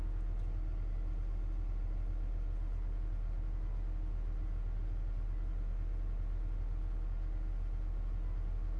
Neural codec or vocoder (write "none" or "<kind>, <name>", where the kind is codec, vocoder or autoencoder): none